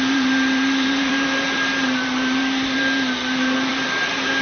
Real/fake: fake